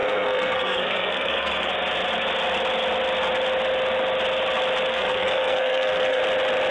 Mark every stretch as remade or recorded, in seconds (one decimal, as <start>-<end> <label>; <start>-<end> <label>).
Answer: 0.0-1.7 remade; 1.7-4.9 recorded; 4.9-6.2 remade; 6.2-6.7 recorded